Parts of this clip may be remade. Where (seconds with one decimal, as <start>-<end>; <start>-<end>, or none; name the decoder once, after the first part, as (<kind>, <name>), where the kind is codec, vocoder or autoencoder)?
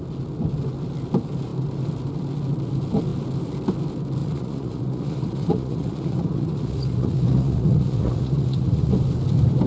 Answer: 4.2-8.9 (vocoder, Vocos)